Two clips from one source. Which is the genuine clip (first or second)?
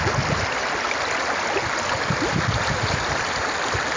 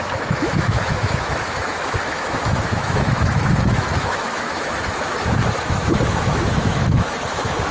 first